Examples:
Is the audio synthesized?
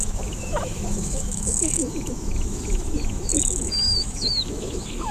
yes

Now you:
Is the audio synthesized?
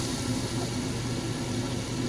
no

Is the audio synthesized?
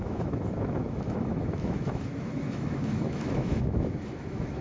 yes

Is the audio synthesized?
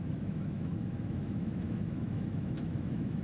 yes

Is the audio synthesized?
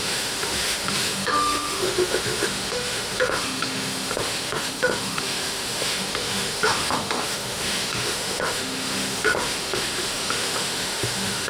yes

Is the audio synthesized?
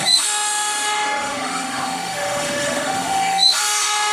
yes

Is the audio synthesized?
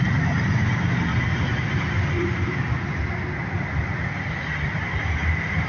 no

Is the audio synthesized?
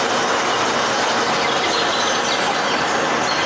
no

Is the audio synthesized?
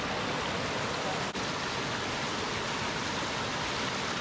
no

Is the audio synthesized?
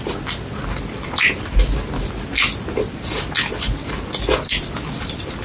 no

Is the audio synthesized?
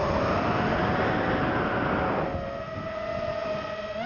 no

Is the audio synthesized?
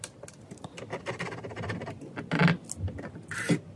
no